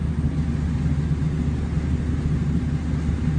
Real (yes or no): yes